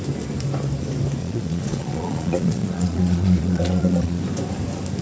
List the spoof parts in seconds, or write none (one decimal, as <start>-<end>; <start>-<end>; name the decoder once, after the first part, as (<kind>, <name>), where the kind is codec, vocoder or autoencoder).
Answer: 1.2-4.2 (vocoder, Vocos)